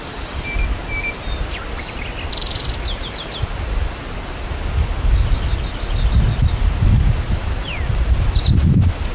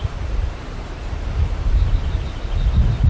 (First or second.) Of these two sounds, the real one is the first